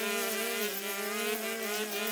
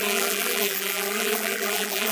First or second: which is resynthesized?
second